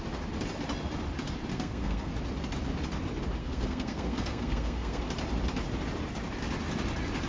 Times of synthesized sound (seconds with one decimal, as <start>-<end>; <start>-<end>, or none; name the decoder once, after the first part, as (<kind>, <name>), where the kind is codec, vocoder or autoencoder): 1.5-2.1 (codec, SNAC); 3.4-5.0